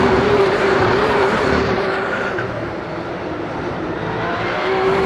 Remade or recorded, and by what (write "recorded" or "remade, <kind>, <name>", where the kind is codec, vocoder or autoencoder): remade, vocoder, BigVGAN v2